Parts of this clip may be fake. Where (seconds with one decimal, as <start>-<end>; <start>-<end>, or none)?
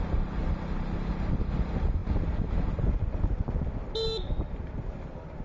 none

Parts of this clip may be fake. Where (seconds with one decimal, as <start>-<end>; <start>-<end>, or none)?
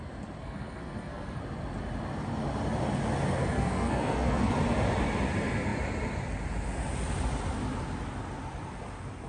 0.4-1.4; 3.4-4.5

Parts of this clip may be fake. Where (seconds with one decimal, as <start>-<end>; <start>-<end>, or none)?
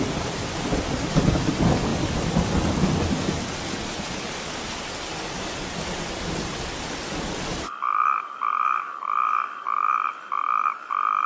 0.0-11.3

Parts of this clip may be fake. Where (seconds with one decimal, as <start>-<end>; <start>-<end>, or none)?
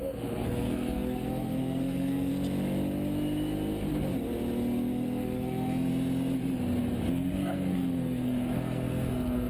0.0-2.3; 4.9-5.9; 7.1-9.5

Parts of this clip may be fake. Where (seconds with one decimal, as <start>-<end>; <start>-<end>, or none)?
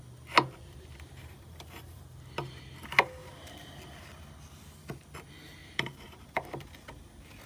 1.2-2.0; 3.2-3.7; 5.6-6.7